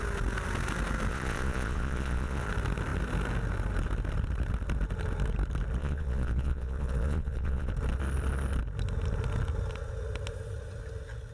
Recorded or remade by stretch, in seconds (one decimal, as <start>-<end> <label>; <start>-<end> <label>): 0.0-1.1 recorded; 1.1-2.5 remade; 2.5-5.8 recorded; 5.8-7.7 remade; 7.7-11.3 recorded